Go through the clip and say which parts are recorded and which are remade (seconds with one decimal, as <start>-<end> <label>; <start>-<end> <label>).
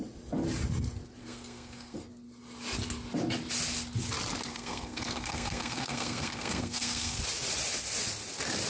0.0-1.2 recorded; 1.2-2.0 remade; 2.0-4.5 recorded; 4.5-7.2 remade; 7.2-8.7 recorded